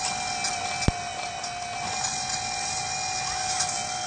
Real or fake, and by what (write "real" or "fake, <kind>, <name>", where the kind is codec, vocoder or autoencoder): real